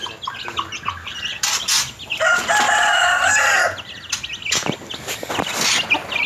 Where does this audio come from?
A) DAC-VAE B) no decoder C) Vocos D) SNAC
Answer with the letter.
B